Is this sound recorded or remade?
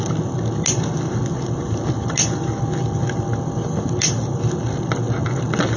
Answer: recorded